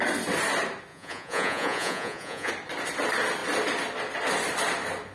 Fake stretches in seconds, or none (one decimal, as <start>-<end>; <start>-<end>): 0.9-2.5